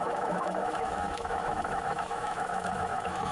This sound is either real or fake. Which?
fake